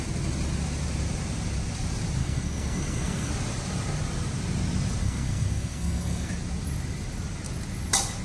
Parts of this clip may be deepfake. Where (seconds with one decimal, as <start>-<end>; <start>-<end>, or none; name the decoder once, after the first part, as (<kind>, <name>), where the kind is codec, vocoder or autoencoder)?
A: 2.2-3.3 (codec, SNAC); 5.0-6.3